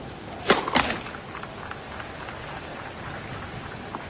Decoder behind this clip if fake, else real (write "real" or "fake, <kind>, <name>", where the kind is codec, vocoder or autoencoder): real